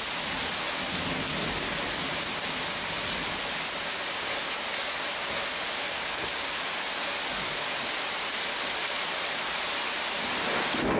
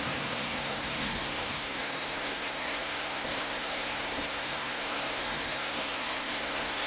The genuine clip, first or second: first